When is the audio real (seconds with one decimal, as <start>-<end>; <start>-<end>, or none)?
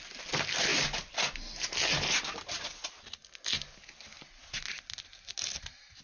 0.0-6.0